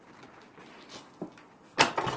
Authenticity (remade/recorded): recorded